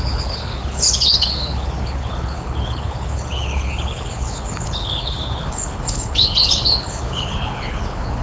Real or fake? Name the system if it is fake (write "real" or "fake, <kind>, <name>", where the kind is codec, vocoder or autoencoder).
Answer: fake, codec, HILCodec